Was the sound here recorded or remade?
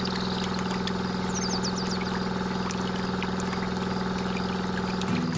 recorded